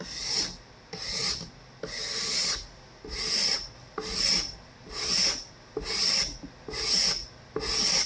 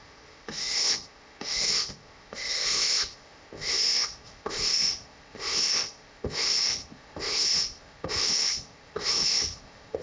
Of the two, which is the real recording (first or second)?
first